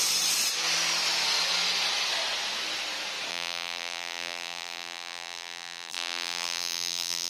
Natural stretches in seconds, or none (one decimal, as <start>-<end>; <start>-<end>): 0.0-3.3